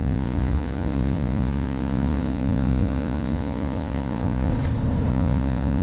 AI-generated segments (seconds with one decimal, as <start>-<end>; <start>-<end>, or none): 0.0-4.5; 5.1-5.8